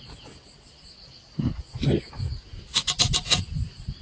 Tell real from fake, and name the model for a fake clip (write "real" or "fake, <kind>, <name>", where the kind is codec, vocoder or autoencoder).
real